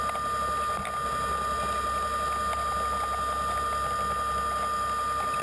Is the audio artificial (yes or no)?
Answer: no